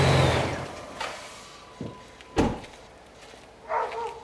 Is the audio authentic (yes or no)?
yes